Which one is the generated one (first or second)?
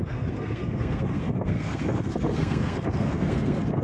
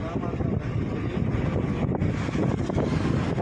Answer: first